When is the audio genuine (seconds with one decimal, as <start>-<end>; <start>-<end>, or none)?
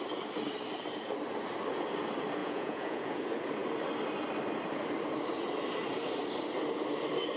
0.0-2.4; 3.2-7.4